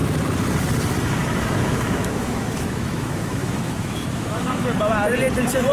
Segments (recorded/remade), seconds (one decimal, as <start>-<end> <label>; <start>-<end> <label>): 0.0-1.2 recorded; 1.2-4.6 remade; 4.6-5.7 recorded